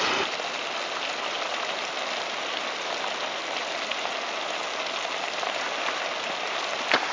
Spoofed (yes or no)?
no